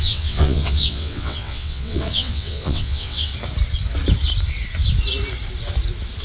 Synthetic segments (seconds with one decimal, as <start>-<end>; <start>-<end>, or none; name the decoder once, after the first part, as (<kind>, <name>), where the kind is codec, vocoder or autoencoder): 0.0-3.3 (vocoder, WaveNeXt)